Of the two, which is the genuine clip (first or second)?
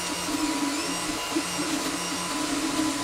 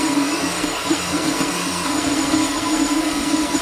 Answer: first